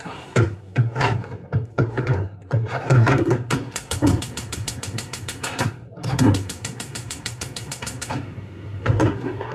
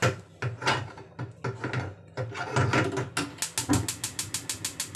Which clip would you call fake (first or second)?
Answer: first